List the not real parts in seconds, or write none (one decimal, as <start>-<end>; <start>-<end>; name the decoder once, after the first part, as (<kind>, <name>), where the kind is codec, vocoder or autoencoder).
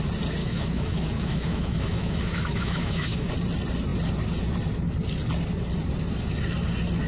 0.4-3.3 (autoencoder, DAC-VAE)